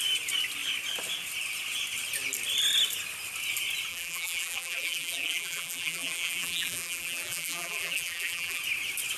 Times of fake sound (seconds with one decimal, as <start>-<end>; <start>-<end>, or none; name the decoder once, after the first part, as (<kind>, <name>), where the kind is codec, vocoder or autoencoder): 3.9-8.6 (vocoder, BigVGAN v2)